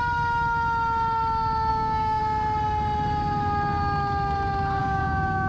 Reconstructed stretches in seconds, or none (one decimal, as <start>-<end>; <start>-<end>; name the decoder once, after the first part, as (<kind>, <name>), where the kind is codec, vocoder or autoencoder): 1.7-2.2 (codec, DAC); 4.8-5.5